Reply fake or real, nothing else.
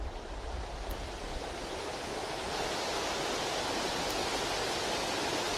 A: real